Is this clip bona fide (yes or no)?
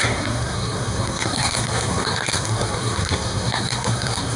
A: no